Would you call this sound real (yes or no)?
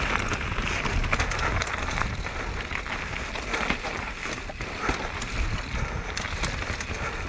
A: yes